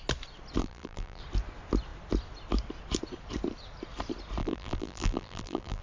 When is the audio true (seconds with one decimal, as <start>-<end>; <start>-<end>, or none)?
0.0-0.6; 1.2-4.4